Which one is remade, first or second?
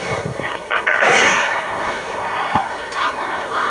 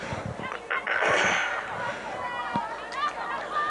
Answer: first